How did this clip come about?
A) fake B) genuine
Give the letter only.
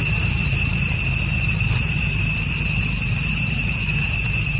A